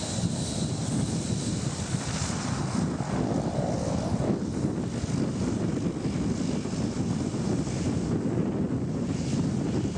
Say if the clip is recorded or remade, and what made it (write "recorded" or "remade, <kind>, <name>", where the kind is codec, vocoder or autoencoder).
recorded